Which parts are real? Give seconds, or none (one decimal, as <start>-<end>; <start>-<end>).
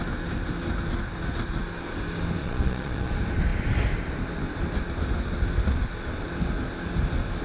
0.0-2.4; 3.1-7.4